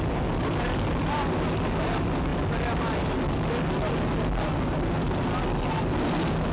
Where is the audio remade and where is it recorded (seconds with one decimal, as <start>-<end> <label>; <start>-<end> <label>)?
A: 0.0-6.5 recorded